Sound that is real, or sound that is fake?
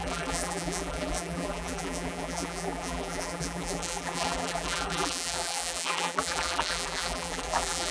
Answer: fake